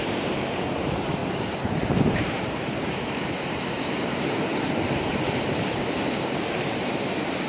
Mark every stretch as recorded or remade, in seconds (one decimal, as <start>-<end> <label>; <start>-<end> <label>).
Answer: 0.0-1.2 remade; 1.2-2.3 recorded; 2.3-4.5 remade; 4.5-5.1 recorded; 5.1-7.5 remade